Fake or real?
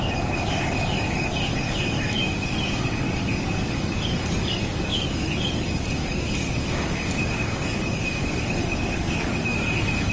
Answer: fake